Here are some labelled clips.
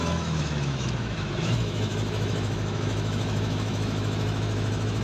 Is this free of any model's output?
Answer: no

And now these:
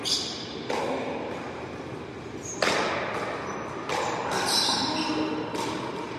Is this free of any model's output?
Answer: yes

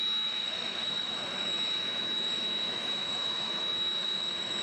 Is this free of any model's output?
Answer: no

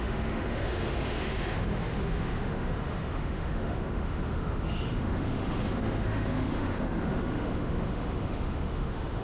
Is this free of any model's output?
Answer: no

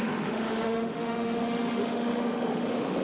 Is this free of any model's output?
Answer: no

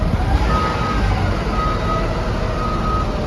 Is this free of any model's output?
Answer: yes